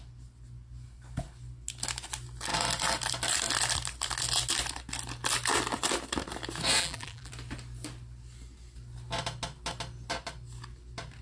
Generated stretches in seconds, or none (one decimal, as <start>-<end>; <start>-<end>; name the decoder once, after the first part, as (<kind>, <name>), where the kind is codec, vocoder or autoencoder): 6.8-7.3 (vocoder, BigVGAN v2)